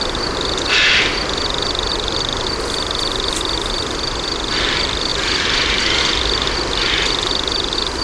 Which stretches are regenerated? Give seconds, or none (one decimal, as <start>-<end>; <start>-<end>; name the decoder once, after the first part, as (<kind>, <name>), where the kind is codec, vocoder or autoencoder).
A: 0.0-2.3 (vocoder, BigVGAN v2); 3.3-8.0